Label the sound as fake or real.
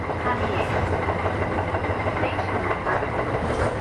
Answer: real